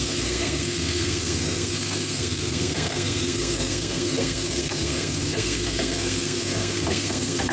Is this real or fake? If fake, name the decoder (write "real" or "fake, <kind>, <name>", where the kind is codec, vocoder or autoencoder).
fake, codec, SNAC